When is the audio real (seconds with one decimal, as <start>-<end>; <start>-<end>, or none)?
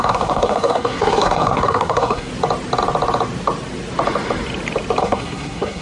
2.3-5.0